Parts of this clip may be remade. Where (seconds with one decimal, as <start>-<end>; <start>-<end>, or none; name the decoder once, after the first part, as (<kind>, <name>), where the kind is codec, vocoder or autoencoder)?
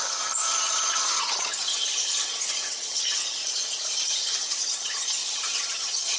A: 0.0-3.4 (vocoder, HiFi-GAN); 4.3-6.2